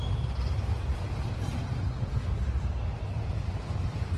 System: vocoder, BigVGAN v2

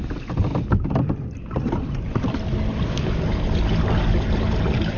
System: none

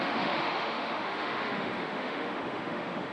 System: autoencoder, DAC-VAE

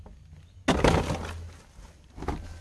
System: none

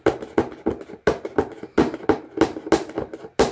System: none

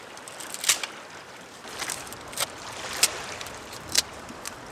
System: vocoder, BigVGAN v2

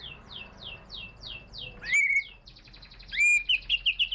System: none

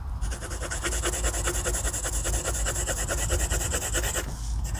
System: none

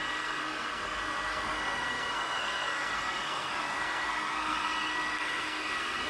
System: codec, SNAC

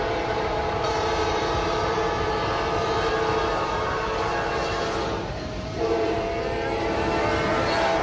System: vocoder, BigVGAN v2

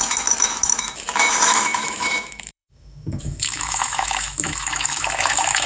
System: autoencoder, DAC-VAE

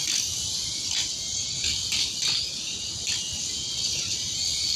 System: none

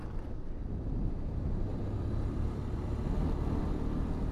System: none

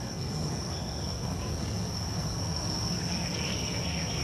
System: codec, SNAC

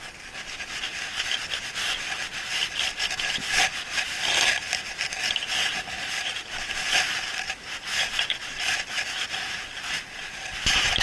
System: none